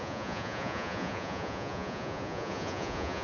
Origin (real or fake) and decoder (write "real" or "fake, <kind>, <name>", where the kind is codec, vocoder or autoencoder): fake, vocoder, Vocos